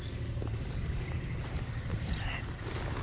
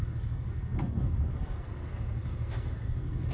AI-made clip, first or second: second